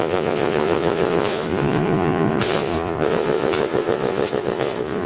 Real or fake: fake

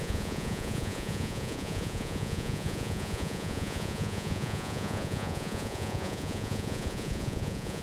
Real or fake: fake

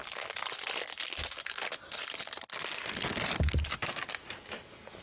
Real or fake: real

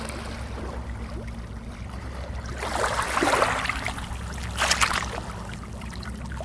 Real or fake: real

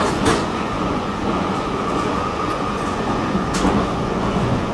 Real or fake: fake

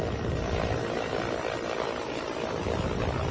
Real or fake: real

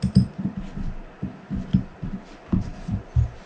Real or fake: real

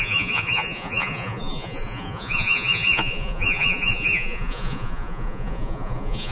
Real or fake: fake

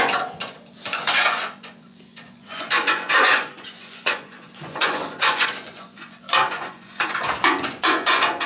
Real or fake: fake